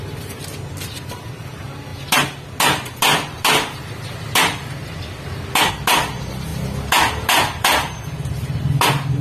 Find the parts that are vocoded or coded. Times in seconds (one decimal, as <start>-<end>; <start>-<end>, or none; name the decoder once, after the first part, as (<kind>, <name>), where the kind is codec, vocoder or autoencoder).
none